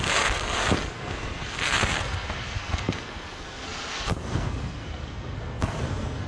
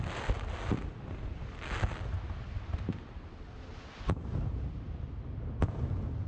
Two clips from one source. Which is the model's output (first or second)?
first